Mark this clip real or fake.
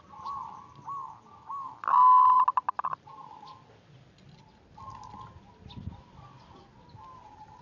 real